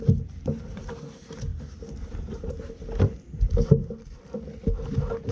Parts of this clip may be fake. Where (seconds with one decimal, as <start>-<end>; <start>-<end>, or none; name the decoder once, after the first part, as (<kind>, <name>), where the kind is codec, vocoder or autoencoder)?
none